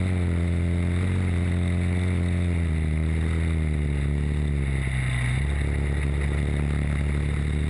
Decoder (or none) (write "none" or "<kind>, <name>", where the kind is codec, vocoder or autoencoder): none